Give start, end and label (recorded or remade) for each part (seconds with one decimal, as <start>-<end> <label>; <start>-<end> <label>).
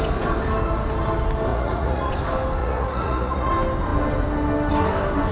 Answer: 0.0-1.5 recorded; 1.5-2.1 remade; 2.1-2.6 recorded; 2.6-3.5 remade; 3.5-5.3 recorded